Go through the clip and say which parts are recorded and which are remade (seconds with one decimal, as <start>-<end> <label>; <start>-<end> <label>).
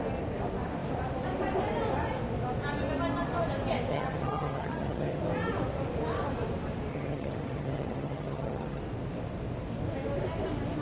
0.0-3.9 recorded; 3.9-5.2 remade; 5.2-6.9 recorded; 6.9-8.8 remade; 8.8-10.8 recorded